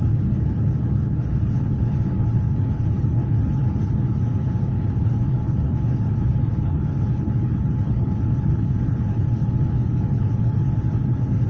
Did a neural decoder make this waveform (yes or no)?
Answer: yes